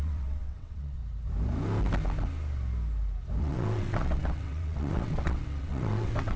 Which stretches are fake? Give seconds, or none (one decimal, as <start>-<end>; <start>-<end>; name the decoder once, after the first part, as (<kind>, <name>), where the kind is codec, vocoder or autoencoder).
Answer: 0.0-1.0 (vocoder, WaveNeXt); 3.4-6.4